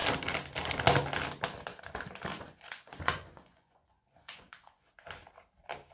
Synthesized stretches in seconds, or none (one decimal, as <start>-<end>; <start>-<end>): 2.3-4.9